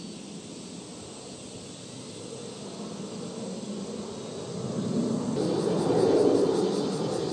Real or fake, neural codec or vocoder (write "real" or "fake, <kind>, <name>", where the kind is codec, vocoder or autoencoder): real